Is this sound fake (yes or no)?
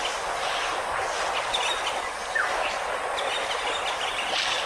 no